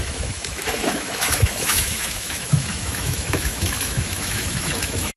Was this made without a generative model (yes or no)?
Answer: no